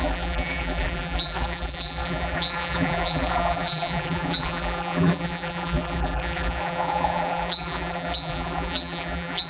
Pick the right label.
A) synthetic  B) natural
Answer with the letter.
A